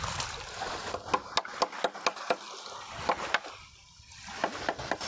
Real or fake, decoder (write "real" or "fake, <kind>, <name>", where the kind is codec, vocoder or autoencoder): real